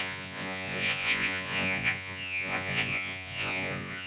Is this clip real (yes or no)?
no